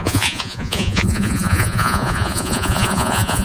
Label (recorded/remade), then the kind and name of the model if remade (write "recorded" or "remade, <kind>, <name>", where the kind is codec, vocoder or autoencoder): remade, vocoder, Vocos